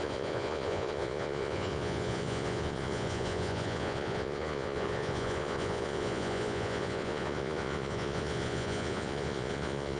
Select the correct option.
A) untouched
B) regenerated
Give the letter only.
B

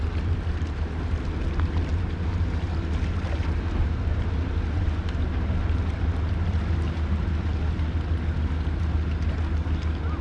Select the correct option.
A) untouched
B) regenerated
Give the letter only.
A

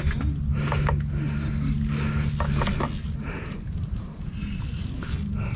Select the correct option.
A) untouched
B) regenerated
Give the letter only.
A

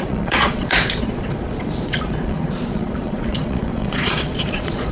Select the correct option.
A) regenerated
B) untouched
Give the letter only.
A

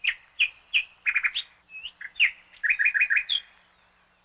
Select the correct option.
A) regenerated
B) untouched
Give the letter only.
B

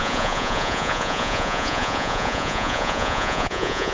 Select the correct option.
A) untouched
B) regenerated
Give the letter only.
B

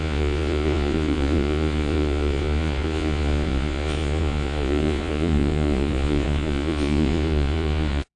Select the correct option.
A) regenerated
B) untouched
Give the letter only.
A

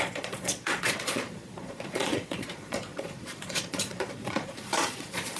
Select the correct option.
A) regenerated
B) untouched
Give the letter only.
A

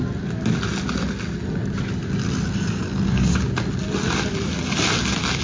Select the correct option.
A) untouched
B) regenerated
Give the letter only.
A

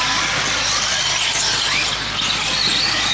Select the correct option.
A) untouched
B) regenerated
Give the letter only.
A